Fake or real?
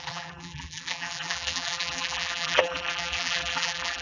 fake